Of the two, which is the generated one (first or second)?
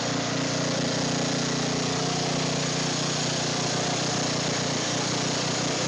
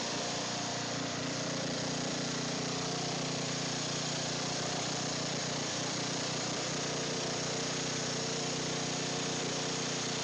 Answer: second